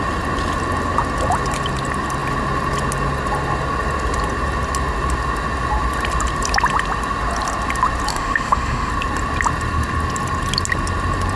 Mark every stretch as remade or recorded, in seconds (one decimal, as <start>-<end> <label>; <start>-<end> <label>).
0.0-8.1 recorded; 8.1-8.9 remade; 8.9-11.4 recorded